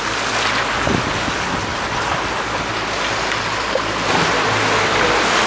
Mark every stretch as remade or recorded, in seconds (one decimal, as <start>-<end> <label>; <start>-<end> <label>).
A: 0.0-5.5 recorded